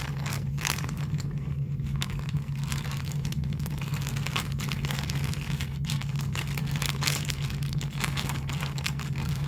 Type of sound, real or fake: fake